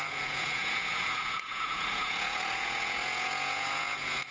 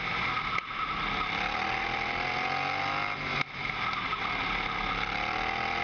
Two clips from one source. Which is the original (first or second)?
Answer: second